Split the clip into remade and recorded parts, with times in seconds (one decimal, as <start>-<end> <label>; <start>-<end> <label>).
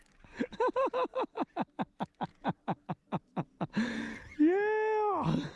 0.0-2.3 recorded; 2.3-2.9 remade; 2.9-5.6 recorded